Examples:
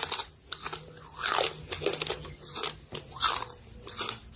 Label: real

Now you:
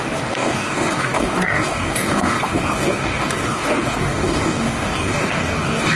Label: fake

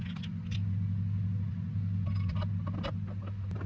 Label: real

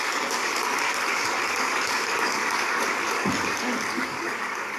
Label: fake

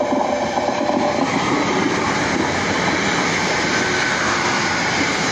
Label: real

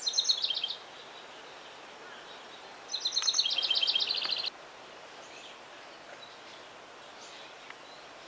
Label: real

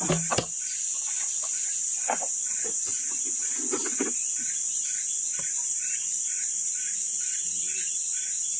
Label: real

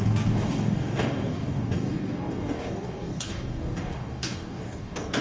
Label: fake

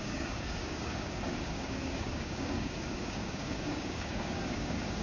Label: fake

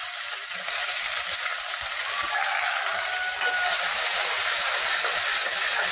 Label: real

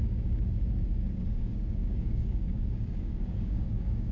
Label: fake